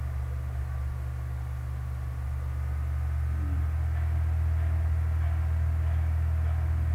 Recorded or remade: recorded